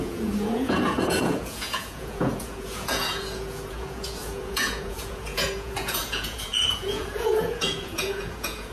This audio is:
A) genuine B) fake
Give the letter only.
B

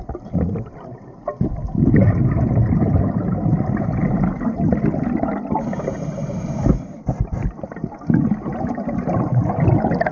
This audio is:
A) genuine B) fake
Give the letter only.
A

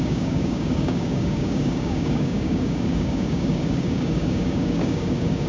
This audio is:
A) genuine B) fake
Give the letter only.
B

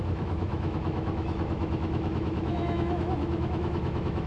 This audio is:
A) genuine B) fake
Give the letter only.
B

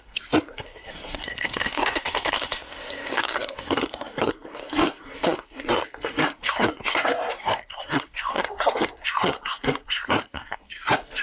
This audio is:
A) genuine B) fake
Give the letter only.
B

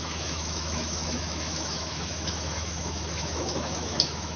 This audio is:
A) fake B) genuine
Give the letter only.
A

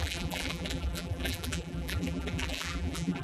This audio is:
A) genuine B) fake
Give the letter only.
B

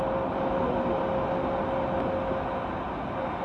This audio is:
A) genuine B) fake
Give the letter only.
A